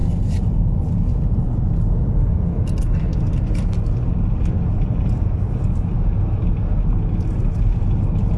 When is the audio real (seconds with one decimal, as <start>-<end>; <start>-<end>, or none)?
0.0-8.4